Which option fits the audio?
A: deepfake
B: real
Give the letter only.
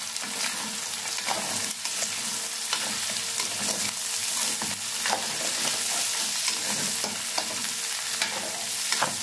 B